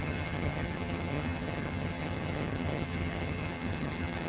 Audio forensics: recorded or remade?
remade